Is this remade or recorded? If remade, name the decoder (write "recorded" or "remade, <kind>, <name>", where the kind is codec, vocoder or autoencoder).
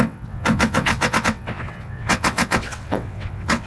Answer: remade, vocoder, WaveNeXt